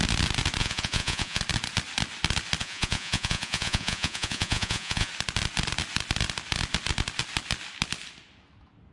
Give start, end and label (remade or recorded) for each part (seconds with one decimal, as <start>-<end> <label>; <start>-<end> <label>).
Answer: 0.0-0.6 recorded; 0.6-1.4 remade; 1.4-2.6 recorded; 2.6-5.1 remade; 5.1-8.9 recorded

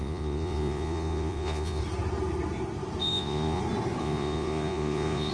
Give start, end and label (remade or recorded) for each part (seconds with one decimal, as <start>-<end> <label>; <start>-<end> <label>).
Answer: 0.0-1.8 remade; 1.8-3.0 recorded; 3.0-3.6 remade; 3.6-4.0 recorded; 4.0-5.3 remade

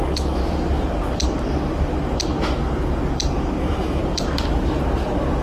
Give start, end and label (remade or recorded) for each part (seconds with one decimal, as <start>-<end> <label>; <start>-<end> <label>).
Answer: 0.0-0.4 remade; 0.4-3.6 recorded; 3.6-4.0 remade; 4.0-5.4 recorded

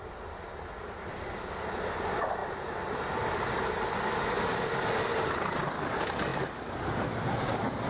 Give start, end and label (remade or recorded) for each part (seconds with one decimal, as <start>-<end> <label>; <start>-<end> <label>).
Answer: 0.0-7.9 recorded

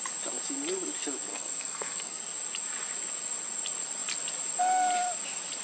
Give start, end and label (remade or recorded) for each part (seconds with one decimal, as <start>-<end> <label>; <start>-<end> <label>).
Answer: 0.0-1.3 recorded; 1.3-2.2 remade; 2.2-5.6 recorded